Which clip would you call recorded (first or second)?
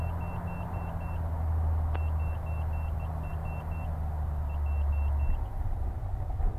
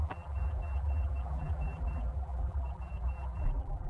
first